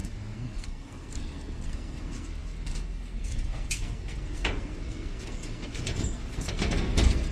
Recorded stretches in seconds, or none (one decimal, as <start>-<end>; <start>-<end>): none